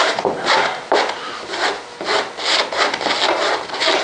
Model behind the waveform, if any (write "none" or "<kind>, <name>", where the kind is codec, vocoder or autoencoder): none